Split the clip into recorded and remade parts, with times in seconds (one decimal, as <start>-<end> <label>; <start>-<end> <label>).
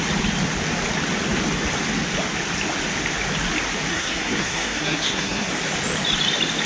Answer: 0.0-3.9 recorded; 3.9-5.5 remade; 5.5-6.7 recorded